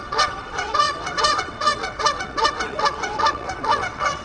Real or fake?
fake